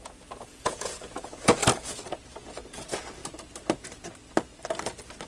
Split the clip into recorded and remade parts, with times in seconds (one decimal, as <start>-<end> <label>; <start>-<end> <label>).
0.0-1.6 remade; 1.6-2.4 recorded; 2.4-3.2 remade; 3.2-5.3 recorded